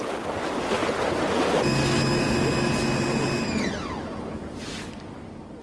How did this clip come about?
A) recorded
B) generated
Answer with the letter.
A